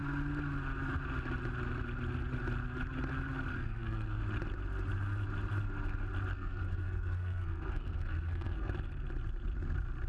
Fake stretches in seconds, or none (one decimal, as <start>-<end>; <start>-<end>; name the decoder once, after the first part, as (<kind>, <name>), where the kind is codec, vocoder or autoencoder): 3.5-4.2 (codec, SNAC); 6.3-8.7